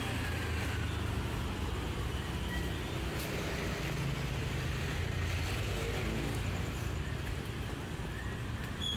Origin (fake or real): real